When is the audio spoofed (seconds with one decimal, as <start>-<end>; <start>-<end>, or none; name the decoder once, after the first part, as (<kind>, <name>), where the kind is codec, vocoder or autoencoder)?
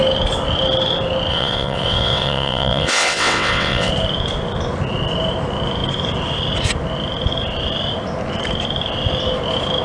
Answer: 1.3-3.9 (vocoder, WaveNeXt)